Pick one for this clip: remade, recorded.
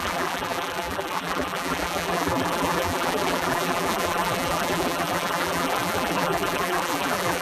remade